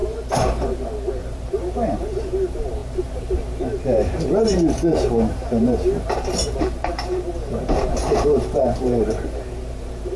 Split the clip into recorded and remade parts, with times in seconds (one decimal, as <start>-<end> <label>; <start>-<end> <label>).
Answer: 0.0-1.2 recorded; 1.2-10.2 remade